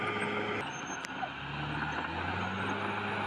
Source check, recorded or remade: recorded